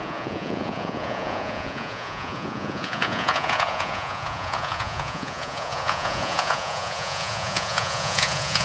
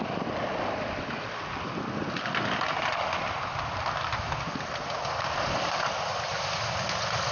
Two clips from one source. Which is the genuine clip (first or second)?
second